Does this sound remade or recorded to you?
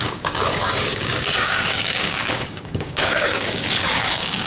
remade